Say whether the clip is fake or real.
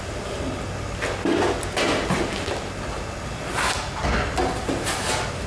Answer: real